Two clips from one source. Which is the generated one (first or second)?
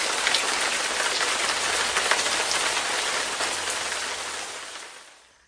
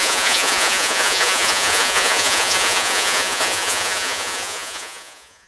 second